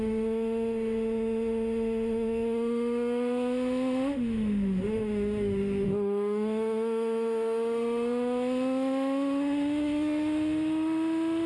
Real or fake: fake